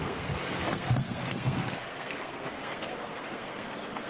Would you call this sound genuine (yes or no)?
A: no